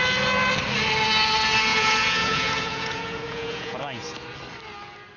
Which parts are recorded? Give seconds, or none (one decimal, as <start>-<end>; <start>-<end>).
0.0-1.7; 3.8-5.2